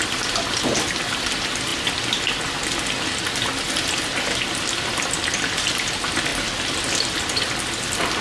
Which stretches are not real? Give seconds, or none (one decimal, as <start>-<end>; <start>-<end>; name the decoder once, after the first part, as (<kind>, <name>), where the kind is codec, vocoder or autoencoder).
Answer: none